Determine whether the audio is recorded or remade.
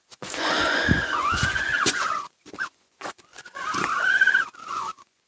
remade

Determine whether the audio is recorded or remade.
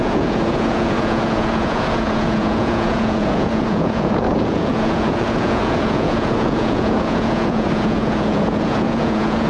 remade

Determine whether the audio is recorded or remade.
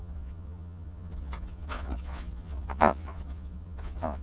remade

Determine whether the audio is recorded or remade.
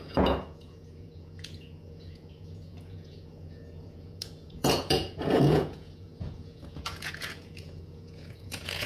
remade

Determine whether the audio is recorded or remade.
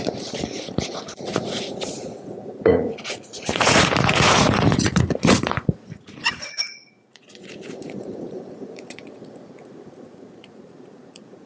remade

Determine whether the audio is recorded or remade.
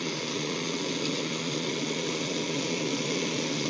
remade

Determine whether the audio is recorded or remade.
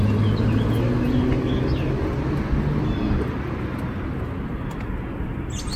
recorded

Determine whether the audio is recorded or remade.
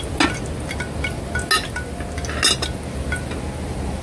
recorded